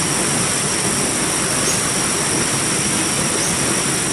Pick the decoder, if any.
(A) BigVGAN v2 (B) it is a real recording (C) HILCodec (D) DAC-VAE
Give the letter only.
B